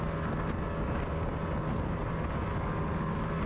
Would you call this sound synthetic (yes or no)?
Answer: no